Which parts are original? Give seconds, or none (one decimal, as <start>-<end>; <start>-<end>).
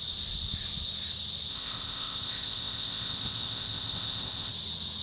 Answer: 0.0-1.5; 4.5-5.0